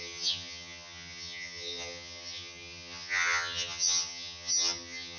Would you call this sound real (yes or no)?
no